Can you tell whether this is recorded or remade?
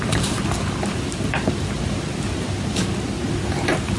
recorded